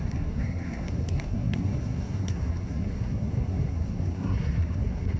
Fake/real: fake